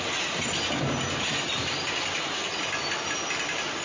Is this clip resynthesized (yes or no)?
no